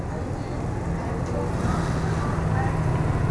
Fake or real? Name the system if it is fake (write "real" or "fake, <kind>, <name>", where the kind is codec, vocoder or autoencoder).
real